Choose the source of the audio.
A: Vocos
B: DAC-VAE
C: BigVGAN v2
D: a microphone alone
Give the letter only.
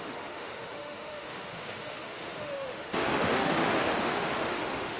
B